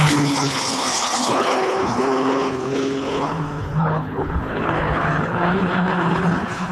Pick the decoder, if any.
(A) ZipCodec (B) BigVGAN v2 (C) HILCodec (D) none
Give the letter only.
C